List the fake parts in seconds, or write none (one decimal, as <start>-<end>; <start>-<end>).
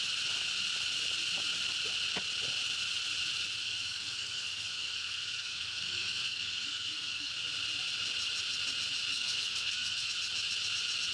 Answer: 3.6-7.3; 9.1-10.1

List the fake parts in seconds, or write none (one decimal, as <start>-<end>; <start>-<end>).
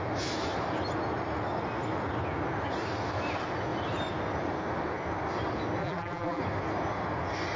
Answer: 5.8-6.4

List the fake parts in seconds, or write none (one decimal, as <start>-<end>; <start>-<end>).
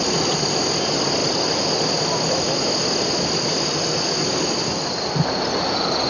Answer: none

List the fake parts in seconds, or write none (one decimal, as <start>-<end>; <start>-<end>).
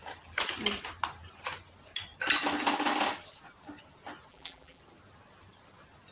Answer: 4.3-4.8